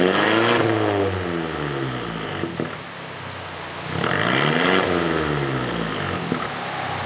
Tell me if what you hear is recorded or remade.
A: recorded